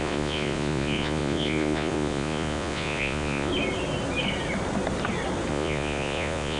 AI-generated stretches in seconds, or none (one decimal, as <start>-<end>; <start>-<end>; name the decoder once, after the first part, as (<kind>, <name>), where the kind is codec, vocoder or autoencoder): 0.0-3.5 (vocoder, Vocos); 5.5-6.6